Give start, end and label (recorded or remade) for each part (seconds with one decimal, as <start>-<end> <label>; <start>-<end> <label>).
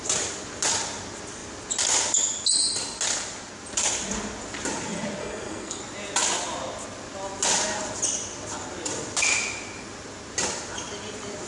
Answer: 0.0-5.2 recorded; 5.2-5.8 remade; 5.8-11.5 recorded